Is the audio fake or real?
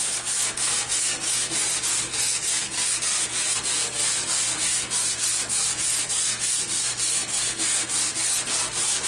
fake